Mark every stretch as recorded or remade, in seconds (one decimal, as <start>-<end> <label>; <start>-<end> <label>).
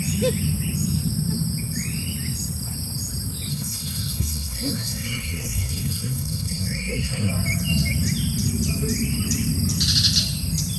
0.0-3.5 recorded; 3.5-7.3 remade; 7.3-10.8 recorded